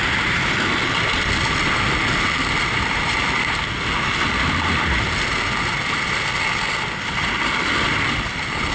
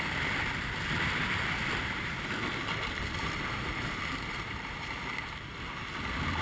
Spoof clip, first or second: second